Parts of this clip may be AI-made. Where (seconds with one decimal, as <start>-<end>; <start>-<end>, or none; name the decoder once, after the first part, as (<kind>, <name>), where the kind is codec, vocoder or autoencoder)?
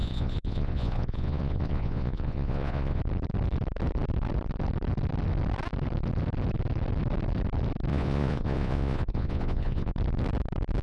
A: 0.0-3.0 (vocoder, Vocos); 7.9-9.9